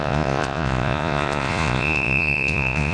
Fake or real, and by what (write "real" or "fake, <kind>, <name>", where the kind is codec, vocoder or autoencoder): fake, vocoder, Vocos